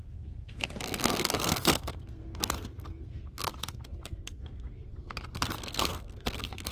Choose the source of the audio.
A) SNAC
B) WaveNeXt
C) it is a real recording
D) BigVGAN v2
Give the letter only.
A